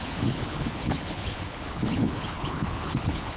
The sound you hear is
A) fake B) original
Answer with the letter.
A